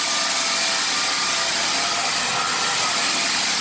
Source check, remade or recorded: recorded